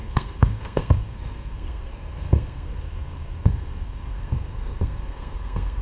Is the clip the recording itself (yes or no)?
no